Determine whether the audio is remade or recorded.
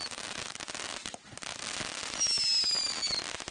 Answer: recorded